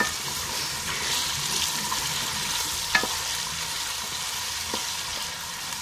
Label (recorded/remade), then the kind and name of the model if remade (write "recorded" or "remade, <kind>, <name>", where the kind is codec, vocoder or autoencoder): recorded